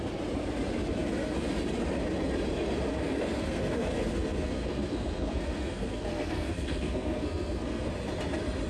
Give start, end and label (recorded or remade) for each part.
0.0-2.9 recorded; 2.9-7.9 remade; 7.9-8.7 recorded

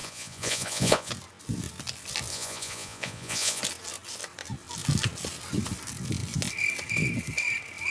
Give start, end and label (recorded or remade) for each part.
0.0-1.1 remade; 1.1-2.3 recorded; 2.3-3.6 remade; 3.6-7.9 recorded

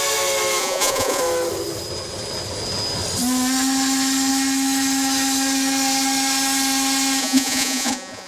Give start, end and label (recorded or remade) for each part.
0.0-0.6 recorded; 0.6-1.2 remade; 1.2-7.2 recorded; 7.2-8.3 remade